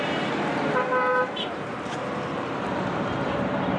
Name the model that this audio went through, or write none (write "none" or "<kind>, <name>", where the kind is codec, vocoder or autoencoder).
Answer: vocoder, BigVGAN v2